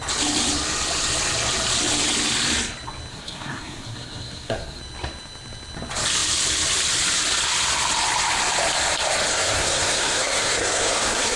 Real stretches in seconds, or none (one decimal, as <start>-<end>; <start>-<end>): 0.0-3.1; 4.8-9.3